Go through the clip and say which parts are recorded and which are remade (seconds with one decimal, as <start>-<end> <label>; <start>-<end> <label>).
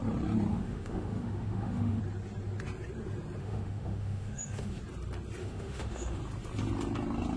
0.0-0.5 recorded; 0.5-2.0 remade; 2.0-3.4 recorded; 3.4-4.8 remade; 4.8-5.4 recorded; 5.4-6.2 remade; 6.2-7.4 recorded